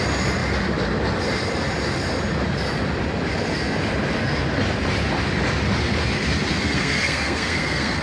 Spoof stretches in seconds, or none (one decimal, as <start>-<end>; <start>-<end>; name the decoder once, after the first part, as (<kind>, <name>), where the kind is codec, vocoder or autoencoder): 6.5-8.0 (codec, SNAC)